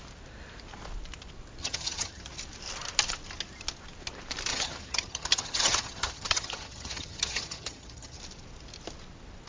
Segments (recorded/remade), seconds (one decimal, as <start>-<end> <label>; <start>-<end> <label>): 0.0-1.6 recorded; 1.6-2.2 remade; 2.2-4.5 recorded; 4.5-8.2 remade; 8.2-9.5 recorded